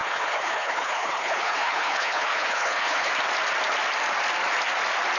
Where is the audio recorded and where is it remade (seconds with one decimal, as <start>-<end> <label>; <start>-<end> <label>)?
0.0-3.1 remade; 3.1-5.2 recorded